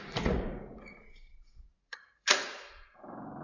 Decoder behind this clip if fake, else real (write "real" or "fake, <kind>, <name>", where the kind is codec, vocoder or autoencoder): fake, vocoder, Vocos